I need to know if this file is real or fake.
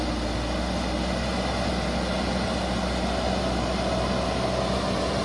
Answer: real